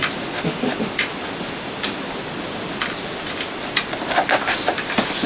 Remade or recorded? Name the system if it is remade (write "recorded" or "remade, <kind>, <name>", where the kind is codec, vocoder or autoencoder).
recorded